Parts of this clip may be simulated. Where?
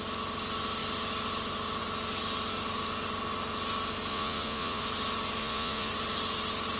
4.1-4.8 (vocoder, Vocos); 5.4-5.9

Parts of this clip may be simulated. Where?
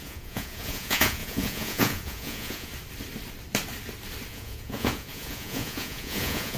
0.0-2.7 (vocoder, Vocos); 4.3-6.6